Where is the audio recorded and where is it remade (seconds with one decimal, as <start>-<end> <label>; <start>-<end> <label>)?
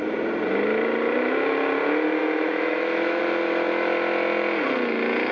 0.0-2.2 recorded; 2.2-3.2 remade; 3.2-5.3 recorded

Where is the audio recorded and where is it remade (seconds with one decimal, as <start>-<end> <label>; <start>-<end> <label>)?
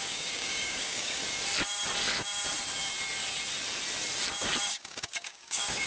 0.0-1.2 remade; 1.2-4.7 recorded; 4.7-5.9 remade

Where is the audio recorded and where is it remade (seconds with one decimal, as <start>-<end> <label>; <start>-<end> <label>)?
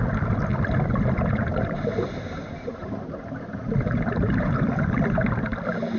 0.0-1.5 recorded; 1.5-4.5 remade; 4.5-6.0 recorded